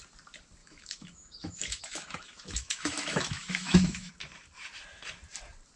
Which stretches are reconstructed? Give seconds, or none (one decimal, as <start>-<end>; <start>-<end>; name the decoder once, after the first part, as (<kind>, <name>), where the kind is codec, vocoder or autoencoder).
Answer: 0.6-4.1 (autoencoder, DAC-VAE)